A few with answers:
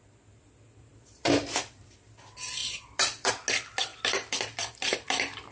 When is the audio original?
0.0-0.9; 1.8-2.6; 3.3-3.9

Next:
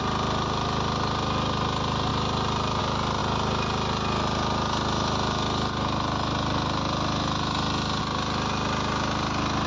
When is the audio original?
0.0-9.7

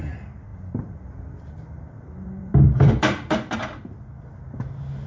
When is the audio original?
0.0-0.5; 3.6-5.1

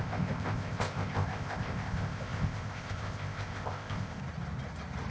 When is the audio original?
4.2-5.1

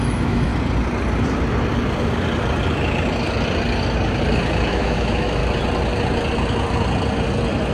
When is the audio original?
0.5-4.7; 5.4-7.7

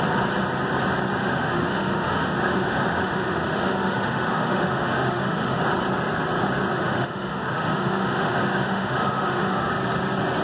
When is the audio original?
0.0-1.2; 5.6-6.7; 9.7-10.4